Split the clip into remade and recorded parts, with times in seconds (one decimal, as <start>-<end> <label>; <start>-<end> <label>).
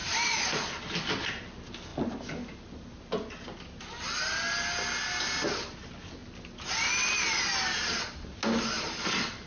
0.0-9.5 recorded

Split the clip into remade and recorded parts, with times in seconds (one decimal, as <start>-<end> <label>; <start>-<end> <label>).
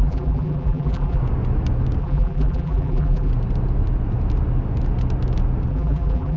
0.0-1.2 remade; 1.2-2.0 recorded; 2.0-3.3 remade; 3.3-5.7 recorded; 5.7-6.4 remade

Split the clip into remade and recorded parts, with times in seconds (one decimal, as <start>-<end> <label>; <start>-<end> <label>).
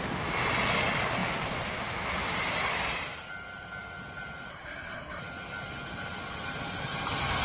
0.0-4.5 recorded; 4.5-5.2 remade; 5.2-7.4 recorded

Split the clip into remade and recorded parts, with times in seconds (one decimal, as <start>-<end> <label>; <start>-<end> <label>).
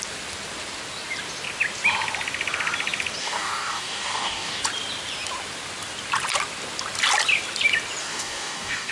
0.0-3.2 recorded; 3.2-4.6 remade; 4.6-8.0 recorded; 8.0-8.9 remade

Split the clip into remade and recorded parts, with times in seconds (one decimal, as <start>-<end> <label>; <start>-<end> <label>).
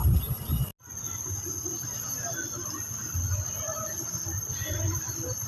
0.0-5.5 recorded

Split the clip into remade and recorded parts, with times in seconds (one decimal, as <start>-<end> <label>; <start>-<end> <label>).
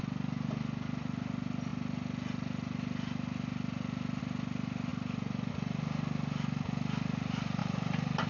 0.0-7.6 recorded; 7.6-8.3 remade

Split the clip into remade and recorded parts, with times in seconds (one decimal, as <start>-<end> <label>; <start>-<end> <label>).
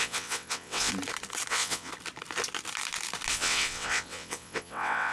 0.0-0.9 remade; 0.9-1.5 recorded; 1.5-1.9 remade; 1.9-3.3 recorded; 3.3-5.1 remade